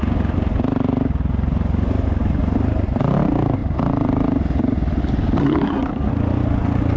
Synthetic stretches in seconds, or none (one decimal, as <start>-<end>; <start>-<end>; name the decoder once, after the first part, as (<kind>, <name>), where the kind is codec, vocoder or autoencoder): 5.4-6.1 (codec, SNAC)